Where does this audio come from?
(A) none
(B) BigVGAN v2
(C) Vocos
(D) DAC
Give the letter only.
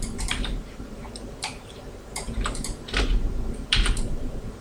B